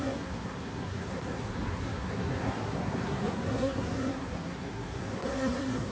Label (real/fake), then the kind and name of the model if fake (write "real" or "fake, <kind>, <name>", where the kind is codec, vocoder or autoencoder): fake, codec, SNAC